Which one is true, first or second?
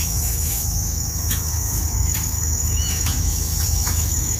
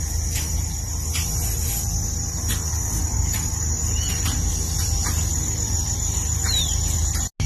second